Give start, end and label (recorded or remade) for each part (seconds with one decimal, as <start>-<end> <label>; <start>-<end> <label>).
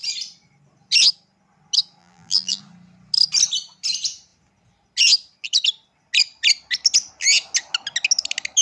0.0-2.0 recorded; 2.0-2.6 remade; 2.6-8.6 recorded